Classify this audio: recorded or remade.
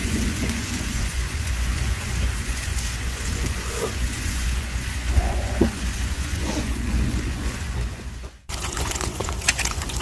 remade